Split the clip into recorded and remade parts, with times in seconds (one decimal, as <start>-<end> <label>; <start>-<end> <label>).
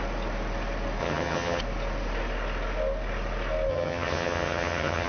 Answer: 0.0-1.0 recorded; 1.0-1.6 remade; 1.6-3.7 recorded; 3.7-5.1 remade